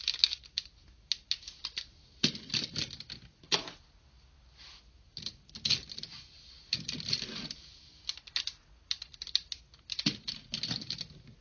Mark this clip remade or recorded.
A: recorded